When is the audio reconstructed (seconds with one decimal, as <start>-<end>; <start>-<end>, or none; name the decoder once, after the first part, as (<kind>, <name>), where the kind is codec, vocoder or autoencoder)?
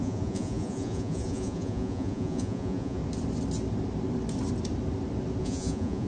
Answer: 0.0-3.0 (vocoder, Vocos); 5.4-6.1